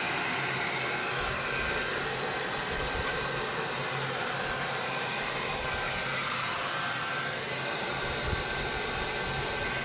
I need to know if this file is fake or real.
real